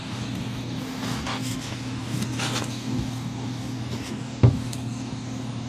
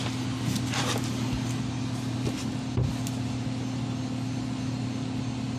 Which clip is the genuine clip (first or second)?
second